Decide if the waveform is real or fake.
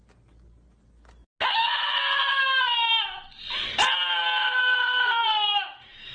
real